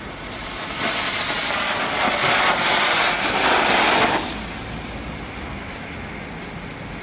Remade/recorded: recorded